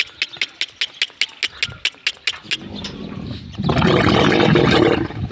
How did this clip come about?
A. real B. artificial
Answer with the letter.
A